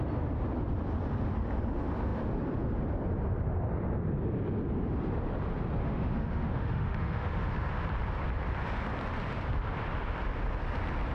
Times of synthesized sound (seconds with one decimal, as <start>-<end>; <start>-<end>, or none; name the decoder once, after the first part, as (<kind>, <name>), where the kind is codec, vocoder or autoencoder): 5.8-7.5 (autoencoder, DAC-VAE)